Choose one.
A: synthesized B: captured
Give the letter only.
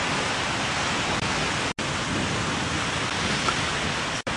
B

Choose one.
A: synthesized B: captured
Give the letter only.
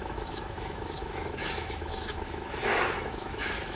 A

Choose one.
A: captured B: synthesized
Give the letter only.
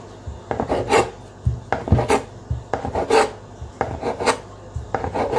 A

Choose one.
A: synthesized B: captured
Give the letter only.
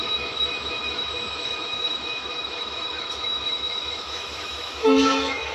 A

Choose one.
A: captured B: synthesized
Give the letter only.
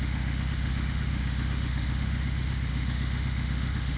B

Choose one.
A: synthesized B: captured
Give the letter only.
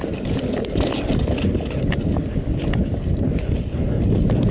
B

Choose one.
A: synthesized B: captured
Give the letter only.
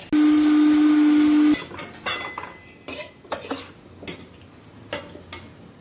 B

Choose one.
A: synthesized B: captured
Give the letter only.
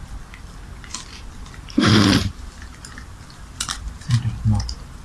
B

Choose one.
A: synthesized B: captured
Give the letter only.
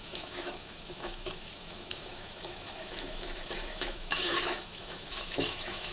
A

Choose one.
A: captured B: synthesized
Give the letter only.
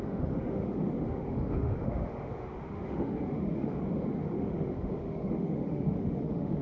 B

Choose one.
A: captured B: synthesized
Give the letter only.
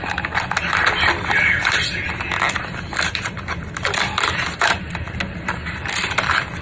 A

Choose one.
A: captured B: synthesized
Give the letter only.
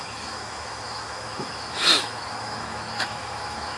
B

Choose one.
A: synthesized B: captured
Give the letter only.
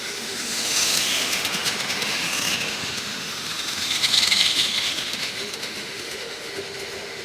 A